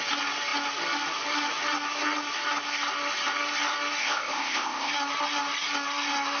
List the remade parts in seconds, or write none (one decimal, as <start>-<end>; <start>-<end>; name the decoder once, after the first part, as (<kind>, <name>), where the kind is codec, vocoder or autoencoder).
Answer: 4.0-4.9 (codec, ZipCodec)

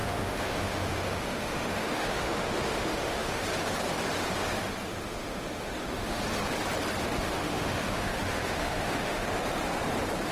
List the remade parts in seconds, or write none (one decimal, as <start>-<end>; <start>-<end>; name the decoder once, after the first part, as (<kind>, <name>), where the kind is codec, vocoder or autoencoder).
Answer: 0.0-3.4 (autoencoder, DAC-VAE); 4.9-6.2; 7.0-9.3

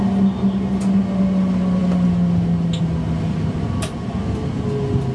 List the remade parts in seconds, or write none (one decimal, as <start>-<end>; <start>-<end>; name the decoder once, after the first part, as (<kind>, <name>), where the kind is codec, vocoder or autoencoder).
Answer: none

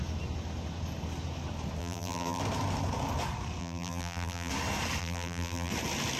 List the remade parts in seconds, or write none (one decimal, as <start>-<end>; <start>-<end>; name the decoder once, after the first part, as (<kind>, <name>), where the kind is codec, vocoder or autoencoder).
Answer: 1.8-2.4 (vocoder, BigVGAN v2); 3.6-4.5; 5.0-5.7

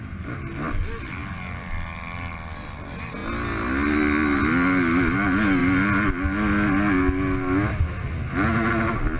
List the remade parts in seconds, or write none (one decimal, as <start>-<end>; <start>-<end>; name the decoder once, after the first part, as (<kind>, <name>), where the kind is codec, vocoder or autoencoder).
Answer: none